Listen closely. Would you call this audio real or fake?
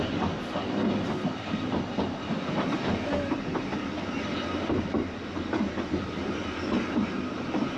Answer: real